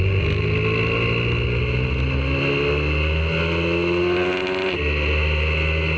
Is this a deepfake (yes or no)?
no